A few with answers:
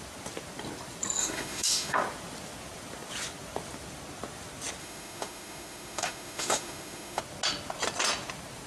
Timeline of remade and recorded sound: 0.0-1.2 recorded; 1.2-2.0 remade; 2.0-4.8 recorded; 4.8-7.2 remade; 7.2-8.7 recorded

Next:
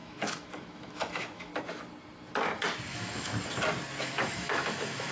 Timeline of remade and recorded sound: 0.0-1.5 remade; 1.5-2.9 recorded; 2.9-3.3 remade; 3.3-4.0 recorded; 4.0-5.1 remade

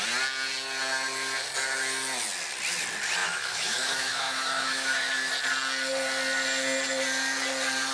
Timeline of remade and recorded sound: 0.0-3.2 recorded; 3.2-5.3 remade; 5.3-7.9 recorded

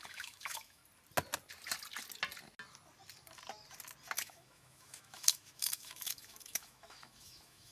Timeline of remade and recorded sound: 0.0-0.8 remade; 0.8-4.2 recorded; 4.2-7.7 remade